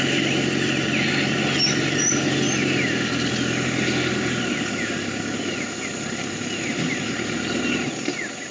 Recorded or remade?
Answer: recorded